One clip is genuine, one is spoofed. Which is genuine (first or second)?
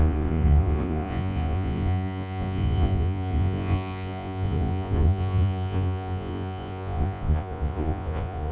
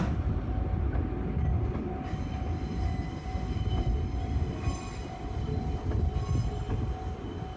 second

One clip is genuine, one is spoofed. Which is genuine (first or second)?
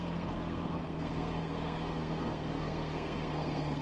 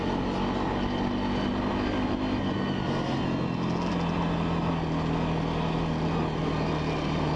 second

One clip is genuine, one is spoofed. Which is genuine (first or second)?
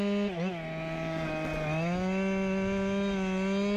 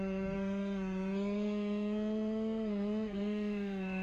first